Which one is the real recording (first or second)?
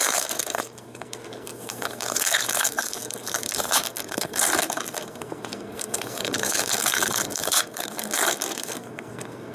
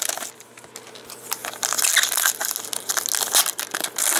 second